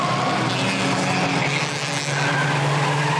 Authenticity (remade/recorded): recorded